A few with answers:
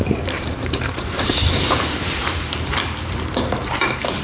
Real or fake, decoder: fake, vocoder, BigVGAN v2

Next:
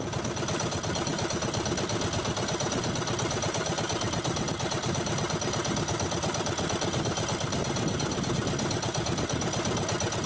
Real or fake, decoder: fake, vocoder, BigVGAN v2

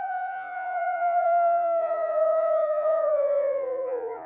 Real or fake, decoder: fake, vocoder, Vocos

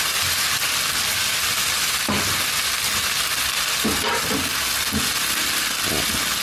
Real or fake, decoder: real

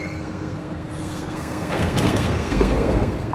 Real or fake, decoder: fake, codec, SNAC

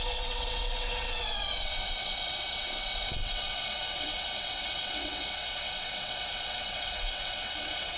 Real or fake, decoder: fake, vocoder, WaveNeXt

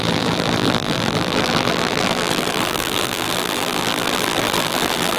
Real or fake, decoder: fake, vocoder, BigVGAN v2